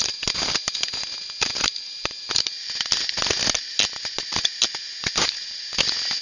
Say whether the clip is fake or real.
real